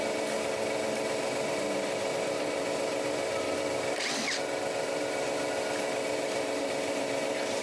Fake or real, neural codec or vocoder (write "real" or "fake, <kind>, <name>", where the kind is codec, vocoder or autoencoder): real